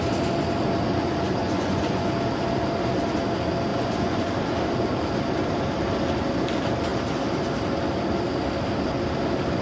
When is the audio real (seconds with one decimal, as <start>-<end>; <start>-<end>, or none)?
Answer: 0.0-1.4; 2.1-3.7; 4.3-9.6